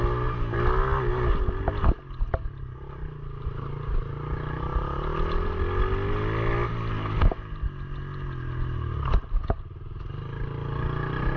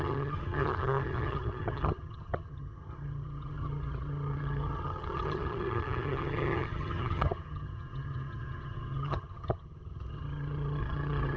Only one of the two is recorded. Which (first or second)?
first